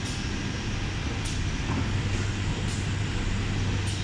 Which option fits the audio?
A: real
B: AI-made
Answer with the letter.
A